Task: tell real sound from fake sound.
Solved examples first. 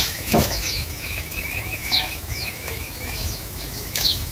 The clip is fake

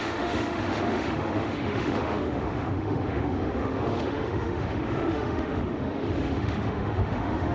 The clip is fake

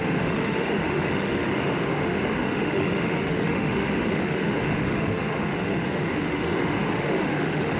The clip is fake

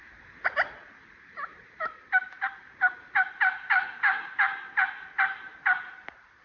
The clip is real